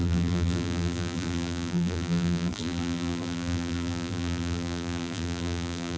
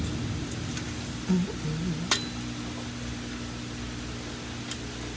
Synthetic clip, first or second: first